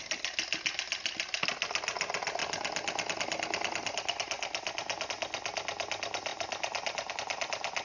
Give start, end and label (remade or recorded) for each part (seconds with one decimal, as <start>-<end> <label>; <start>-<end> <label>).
0.0-7.8 recorded